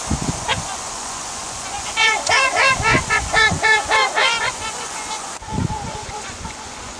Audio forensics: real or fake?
fake